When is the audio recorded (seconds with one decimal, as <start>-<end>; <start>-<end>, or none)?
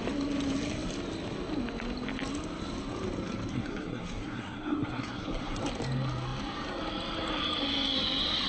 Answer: 0.0-3.5; 5.6-8.5